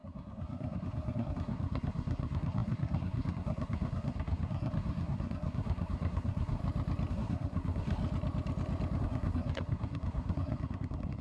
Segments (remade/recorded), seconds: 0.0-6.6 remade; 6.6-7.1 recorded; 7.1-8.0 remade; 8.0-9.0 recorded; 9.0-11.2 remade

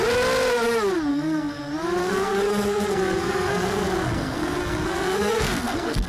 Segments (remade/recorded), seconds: 0.0-1.1 recorded; 1.1-1.6 remade; 1.6-2.0 recorded; 2.0-6.1 remade

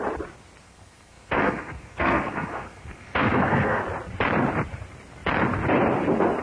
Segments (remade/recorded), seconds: 0.0-0.6 recorded; 0.6-3.8 remade; 3.8-6.4 recorded

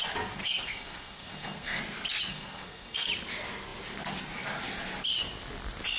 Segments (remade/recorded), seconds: 0.0-0.4 recorded; 0.4-1.8 remade; 1.8-2.3 recorded; 2.3-3.1 remade; 3.1-6.0 recorded